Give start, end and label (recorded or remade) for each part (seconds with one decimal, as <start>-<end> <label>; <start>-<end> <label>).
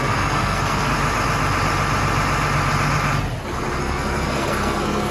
0.0-0.9 remade; 0.9-3.8 recorded; 3.8-5.1 remade